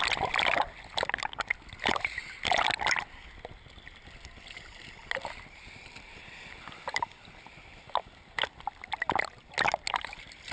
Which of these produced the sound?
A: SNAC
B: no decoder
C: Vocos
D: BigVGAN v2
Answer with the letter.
B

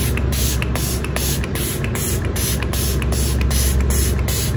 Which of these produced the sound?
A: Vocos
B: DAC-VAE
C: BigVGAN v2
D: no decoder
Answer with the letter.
D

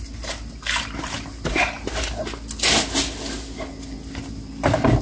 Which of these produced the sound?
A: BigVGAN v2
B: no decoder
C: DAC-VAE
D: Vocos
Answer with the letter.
B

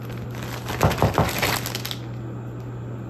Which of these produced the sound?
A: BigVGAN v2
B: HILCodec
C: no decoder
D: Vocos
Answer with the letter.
C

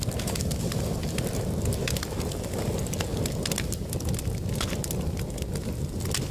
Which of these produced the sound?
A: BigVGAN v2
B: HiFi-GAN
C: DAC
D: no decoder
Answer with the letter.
D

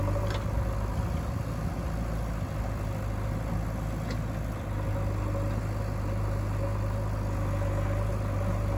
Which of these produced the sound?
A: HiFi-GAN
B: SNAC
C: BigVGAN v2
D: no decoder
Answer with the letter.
D